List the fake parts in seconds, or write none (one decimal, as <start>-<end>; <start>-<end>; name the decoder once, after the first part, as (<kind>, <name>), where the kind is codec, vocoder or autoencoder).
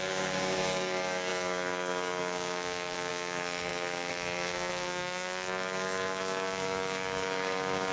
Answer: 0.0-7.9 (codec, DAC)